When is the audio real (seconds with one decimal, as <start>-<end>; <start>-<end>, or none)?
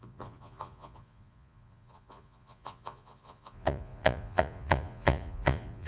none